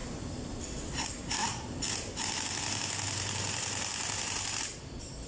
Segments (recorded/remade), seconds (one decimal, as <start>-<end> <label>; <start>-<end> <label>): 0.0-5.3 recorded